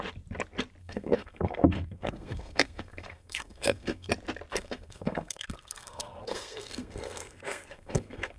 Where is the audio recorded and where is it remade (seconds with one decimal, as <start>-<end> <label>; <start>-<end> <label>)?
0.0-0.8 recorded; 0.8-4.1 remade; 4.1-4.5 recorded; 4.5-8.4 remade